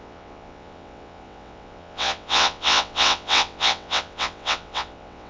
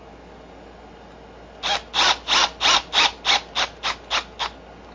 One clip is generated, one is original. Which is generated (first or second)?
first